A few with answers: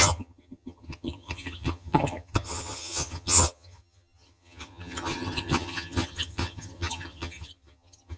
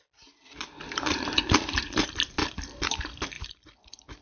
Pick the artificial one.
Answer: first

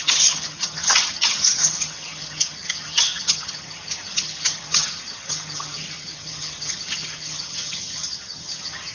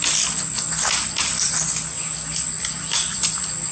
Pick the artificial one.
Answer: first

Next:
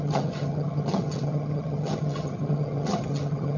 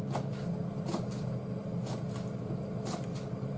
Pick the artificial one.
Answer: first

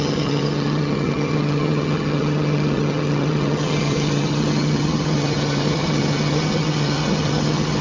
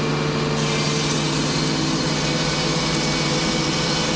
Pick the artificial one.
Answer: first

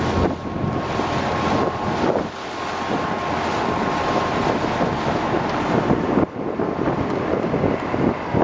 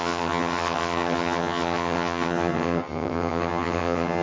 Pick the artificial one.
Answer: second